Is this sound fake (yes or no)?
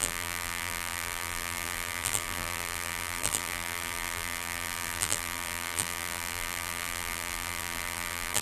yes